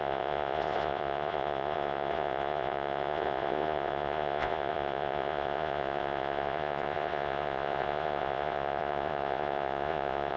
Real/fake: fake